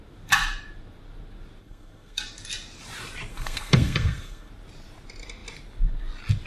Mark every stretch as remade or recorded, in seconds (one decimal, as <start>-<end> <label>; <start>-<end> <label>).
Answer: 0.0-1.6 recorded; 1.6-2.2 remade; 2.2-3.3 recorded; 3.3-4.5 remade; 4.5-6.5 recorded